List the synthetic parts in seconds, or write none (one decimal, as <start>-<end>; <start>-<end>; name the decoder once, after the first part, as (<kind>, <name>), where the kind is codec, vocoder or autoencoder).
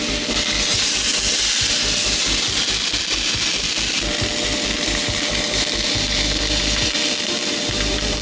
none